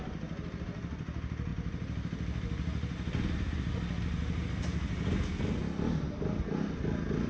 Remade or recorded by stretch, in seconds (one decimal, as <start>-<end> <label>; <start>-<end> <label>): 0.0-7.3 recorded

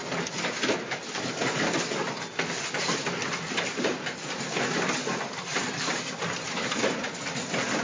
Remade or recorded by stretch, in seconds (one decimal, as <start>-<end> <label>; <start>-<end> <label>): 0.0-3.2 recorded; 3.2-6.8 remade; 6.8-7.8 recorded

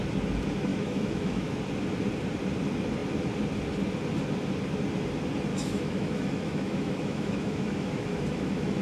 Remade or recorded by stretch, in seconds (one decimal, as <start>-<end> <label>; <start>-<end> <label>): 0.0-0.7 recorded; 0.7-1.6 remade; 1.6-5.5 recorded; 5.5-8.8 remade

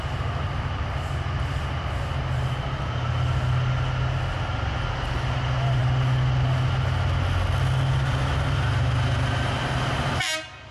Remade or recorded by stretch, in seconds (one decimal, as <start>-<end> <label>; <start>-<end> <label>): 0.0-10.7 recorded

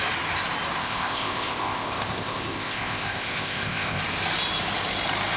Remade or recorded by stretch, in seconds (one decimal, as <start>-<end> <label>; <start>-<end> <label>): 0.0-0.8 recorded; 0.8-4.0 remade; 4.0-5.4 recorded